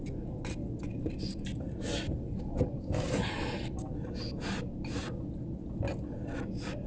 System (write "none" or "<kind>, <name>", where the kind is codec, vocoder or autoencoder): none